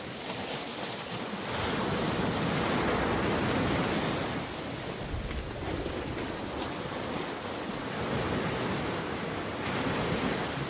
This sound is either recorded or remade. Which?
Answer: recorded